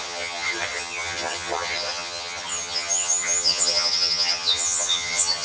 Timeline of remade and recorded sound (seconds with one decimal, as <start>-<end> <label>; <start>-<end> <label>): 0.0-5.4 remade